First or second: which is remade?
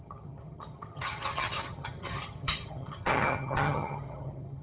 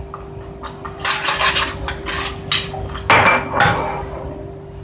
first